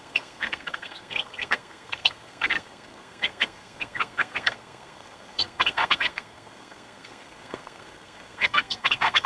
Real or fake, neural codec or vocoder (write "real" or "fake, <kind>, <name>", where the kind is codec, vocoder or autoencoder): fake, codec, SNAC